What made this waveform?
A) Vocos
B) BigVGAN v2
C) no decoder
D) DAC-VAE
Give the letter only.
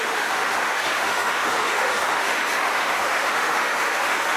D